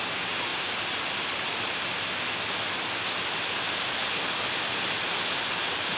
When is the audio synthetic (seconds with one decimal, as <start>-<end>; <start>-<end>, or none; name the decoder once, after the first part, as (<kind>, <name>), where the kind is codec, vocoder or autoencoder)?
none

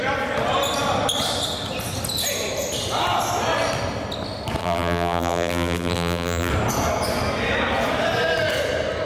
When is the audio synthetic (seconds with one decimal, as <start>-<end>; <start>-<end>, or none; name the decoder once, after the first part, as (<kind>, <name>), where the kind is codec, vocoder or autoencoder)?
4.6-6.5 (vocoder, BigVGAN v2)

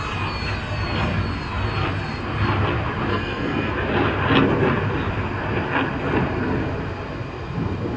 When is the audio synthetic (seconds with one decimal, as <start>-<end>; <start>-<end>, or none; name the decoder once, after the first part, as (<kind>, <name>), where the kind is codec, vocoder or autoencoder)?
3.1-3.7 (codec, SNAC)

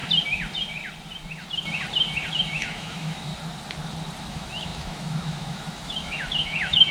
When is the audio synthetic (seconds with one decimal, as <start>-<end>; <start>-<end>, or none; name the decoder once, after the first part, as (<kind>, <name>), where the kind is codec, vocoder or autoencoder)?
2.3-3.3 (autoencoder, DAC-VAE); 4.2-6.9

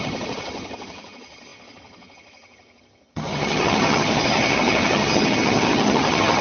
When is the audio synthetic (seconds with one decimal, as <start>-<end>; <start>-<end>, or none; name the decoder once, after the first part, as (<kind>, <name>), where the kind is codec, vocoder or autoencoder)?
0.0-6.4 (vocoder, HiFi-GAN)

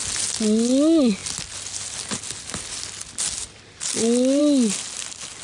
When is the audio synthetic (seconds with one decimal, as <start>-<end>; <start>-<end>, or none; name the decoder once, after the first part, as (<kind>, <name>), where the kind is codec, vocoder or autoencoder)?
none

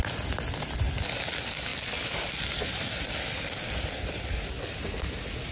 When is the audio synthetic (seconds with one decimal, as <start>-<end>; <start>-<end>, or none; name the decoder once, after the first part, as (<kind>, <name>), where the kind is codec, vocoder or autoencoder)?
none

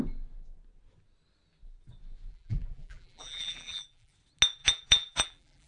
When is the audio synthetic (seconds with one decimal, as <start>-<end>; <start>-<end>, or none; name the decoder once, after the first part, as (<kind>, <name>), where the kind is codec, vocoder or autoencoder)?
2.3-4.1 (vocoder, BigVGAN v2); 4.6-5.7